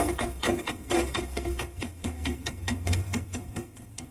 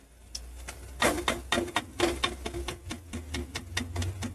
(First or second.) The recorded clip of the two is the second